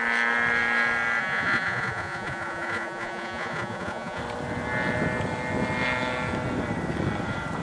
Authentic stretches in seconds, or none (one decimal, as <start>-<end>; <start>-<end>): 0.0-1.2; 4.2-7.6